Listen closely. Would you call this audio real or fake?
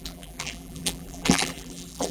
fake